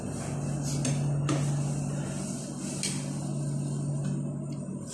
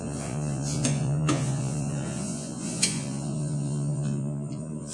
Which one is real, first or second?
first